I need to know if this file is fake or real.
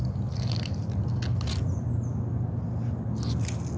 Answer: real